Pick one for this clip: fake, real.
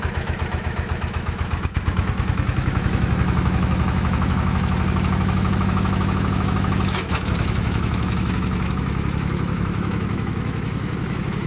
fake